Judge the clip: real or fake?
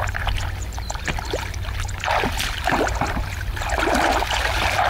real